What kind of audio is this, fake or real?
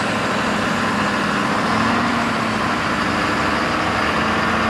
real